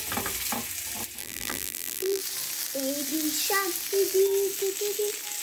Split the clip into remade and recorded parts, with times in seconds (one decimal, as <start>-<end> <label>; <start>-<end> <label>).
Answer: 0.0-1.2 recorded; 1.2-2.2 remade; 2.2-5.4 recorded